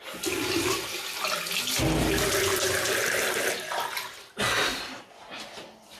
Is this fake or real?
real